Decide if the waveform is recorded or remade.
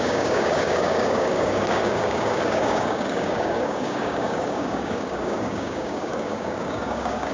remade